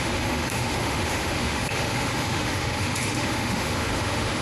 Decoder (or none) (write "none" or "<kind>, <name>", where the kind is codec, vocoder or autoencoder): autoencoder, DAC-VAE